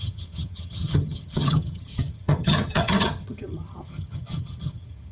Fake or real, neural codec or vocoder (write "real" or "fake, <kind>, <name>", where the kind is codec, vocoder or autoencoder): fake, vocoder, HiFi-GAN